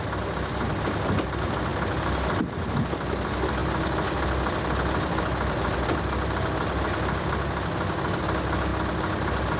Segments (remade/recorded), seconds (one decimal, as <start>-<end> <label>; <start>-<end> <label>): 0.0-9.6 recorded